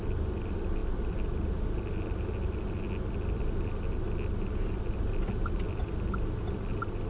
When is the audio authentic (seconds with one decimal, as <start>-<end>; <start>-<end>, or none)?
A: 0.0-7.1